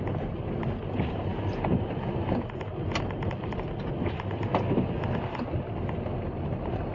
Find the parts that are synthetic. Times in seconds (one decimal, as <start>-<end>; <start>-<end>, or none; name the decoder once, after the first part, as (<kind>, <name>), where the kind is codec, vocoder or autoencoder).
none